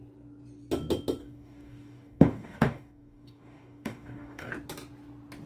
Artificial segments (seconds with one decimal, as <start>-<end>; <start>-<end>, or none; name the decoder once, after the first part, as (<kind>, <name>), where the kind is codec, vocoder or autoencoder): 1.2-4.5 (codec, DAC)